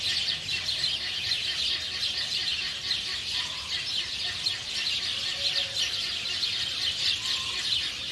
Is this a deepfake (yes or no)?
no